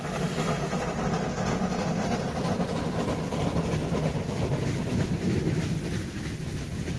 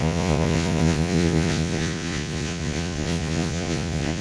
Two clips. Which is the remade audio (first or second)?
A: second